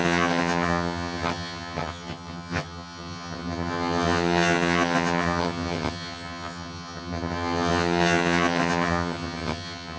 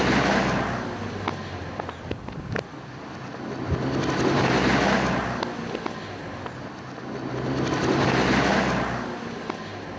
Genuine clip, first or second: second